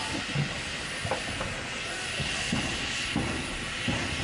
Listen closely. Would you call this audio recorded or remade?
recorded